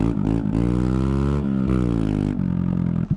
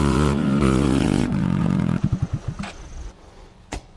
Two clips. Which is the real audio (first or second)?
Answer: first